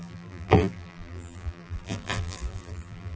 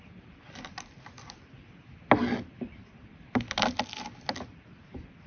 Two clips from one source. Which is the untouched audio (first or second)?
second